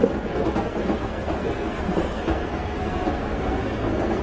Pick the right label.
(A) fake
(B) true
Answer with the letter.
A